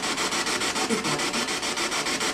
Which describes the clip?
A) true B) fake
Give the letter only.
A